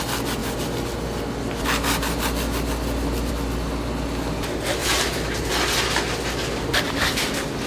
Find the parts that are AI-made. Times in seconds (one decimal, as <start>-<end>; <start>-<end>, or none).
4.8-5.5; 6.7-7.3